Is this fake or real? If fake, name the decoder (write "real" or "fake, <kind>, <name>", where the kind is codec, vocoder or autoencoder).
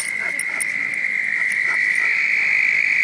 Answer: real